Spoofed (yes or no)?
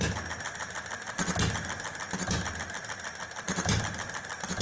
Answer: no